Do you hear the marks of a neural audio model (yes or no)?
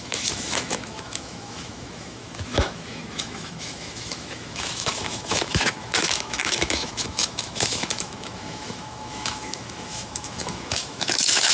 yes